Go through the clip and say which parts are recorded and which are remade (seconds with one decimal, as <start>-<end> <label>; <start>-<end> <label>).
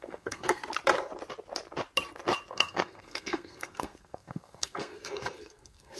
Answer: 0.0-0.6 remade; 0.6-2.5 recorded; 2.5-6.0 remade